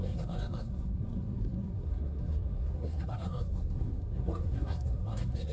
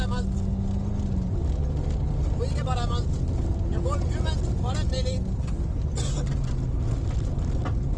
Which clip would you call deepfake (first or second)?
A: first